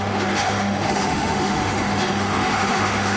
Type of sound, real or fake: fake